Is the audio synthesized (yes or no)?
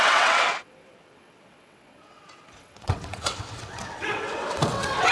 yes